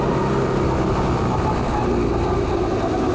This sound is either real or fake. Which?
real